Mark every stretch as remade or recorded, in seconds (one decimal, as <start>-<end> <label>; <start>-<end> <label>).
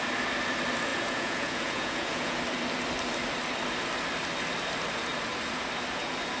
0.0-0.9 recorded; 0.9-2.4 remade; 2.4-6.4 recorded